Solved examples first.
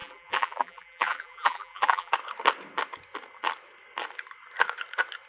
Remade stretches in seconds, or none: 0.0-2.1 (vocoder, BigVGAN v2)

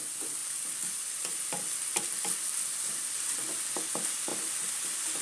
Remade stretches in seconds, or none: none

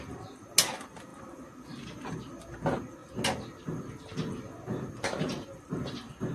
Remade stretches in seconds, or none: none

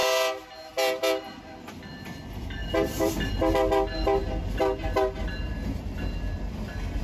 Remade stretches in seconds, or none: 2.6-3.3 (vocoder, BigVGAN v2)